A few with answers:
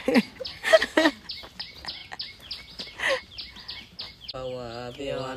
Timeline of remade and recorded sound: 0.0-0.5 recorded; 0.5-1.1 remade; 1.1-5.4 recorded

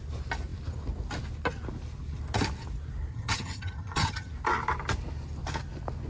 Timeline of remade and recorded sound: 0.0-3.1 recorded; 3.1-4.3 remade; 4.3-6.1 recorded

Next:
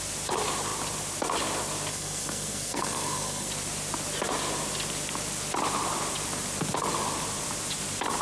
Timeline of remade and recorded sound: 0.0-1.9 recorded; 1.9-3.5 remade; 3.5-8.2 recorded